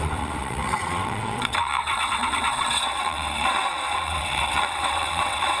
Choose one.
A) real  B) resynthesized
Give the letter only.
B